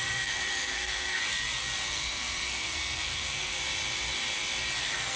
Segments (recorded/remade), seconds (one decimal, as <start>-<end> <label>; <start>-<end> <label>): 0.0-1.2 remade; 1.2-1.9 recorded; 1.9-3.6 remade; 3.6-4.8 recorded; 4.8-5.2 remade